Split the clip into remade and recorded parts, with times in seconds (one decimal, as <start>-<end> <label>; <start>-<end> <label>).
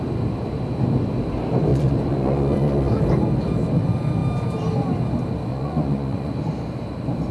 0.0-1.7 recorded; 1.7-3.0 remade; 3.0-5.5 recorded; 5.5-6.3 remade; 6.3-7.3 recorded